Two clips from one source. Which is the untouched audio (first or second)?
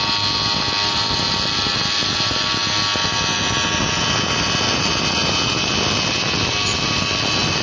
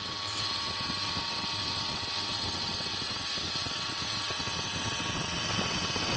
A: first